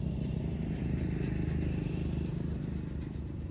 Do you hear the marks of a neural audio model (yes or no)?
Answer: no